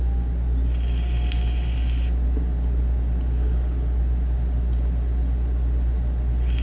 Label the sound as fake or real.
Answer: real